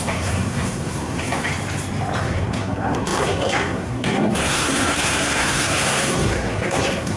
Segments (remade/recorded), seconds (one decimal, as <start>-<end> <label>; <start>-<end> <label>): 0.0-1.5 remade; 1.5-2.2 recorded; 2.2-7.2 remade